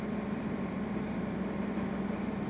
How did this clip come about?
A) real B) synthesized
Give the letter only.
B